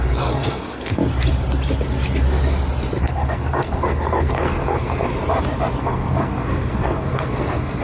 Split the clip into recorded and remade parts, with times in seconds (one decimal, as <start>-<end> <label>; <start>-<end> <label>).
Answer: 0.0-1.0 remade; 1.0-3.0 recorded; 3.0-5.1 remade; 5.1-5.8 recorded; 5.8-7.8 remade